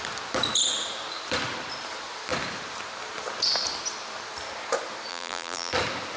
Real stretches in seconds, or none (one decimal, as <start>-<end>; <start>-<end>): 0.0-5.1; 5.7-6.2